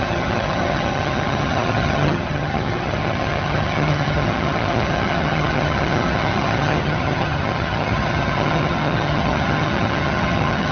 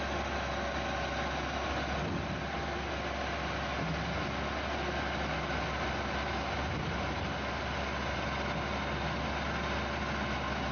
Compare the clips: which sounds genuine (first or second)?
second